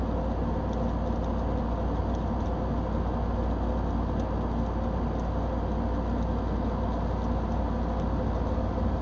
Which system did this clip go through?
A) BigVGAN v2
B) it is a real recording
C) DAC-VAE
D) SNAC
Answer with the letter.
B